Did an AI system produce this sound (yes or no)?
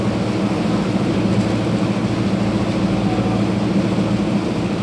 no